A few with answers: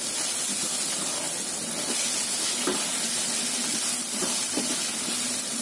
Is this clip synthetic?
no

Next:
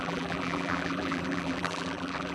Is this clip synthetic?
yes